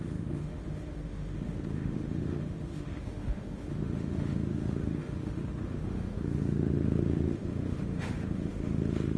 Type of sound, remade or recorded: remade